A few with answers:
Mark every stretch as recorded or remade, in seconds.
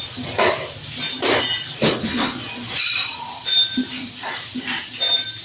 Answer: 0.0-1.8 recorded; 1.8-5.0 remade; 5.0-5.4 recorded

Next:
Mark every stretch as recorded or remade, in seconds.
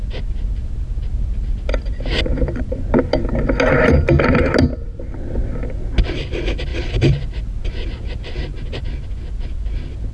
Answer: 0.0-6.7 recorded; 6.7-7.3 remade; 7.3-10.1 recorded